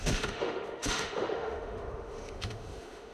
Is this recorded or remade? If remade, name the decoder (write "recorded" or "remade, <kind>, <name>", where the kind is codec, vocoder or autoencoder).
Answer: remade, autoencoder, DAC-VAE